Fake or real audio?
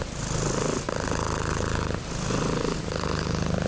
real